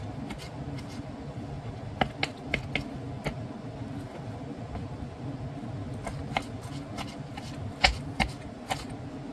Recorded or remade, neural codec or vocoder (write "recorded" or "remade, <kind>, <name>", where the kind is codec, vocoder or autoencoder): recorded